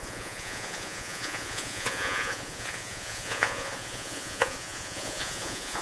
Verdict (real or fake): fake